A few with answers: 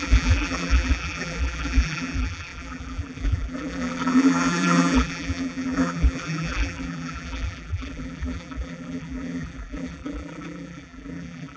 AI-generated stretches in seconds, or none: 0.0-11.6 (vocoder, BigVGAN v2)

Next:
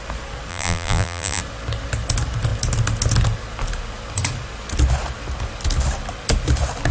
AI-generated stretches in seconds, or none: 0.5-1.4 (vocoder, BigVGAN v2)

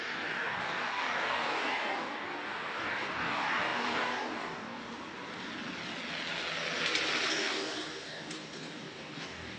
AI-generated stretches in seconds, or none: 0.0-4.8 (codec, DAC); 7.3-9.6

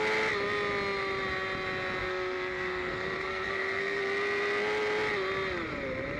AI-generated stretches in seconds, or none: 2.0-4.0 (codec, SNAC)

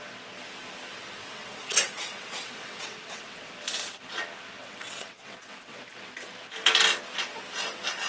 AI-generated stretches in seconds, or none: 1.2-3.5 (vocoder, WaveNeXt); 4.6-5.8

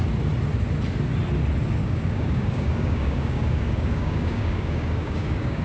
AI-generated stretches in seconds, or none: 1.8-5.6 (codec, DAC)